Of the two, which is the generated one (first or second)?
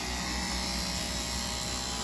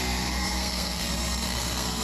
second